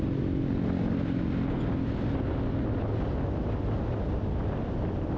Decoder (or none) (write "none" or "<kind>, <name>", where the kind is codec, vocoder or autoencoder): none